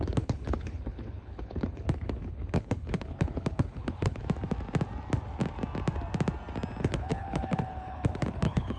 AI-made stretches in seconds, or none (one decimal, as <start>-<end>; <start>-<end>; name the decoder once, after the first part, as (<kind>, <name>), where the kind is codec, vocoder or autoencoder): 0.0-4.2 (codec, HILCodec); 6.8-8.8